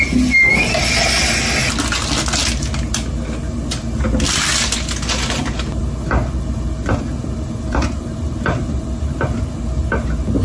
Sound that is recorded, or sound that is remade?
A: recorded